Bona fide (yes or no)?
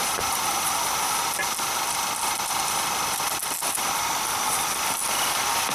yes